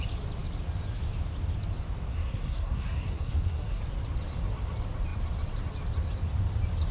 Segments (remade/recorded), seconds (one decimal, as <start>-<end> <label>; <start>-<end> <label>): 0.0-2.1 recorded; 2.1-3.8 remade; 3.8-6.9 recorded